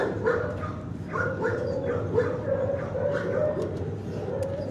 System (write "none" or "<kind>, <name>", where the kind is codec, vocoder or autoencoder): none